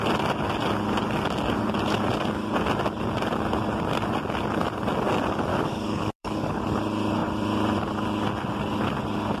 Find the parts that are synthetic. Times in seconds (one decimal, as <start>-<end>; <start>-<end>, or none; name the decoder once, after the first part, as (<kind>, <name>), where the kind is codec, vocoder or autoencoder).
5.5-6.6 (codec, DAC)